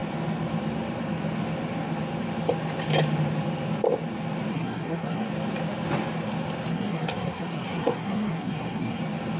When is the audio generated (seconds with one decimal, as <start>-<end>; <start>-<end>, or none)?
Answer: 4.5-5.3; 6.7-9.0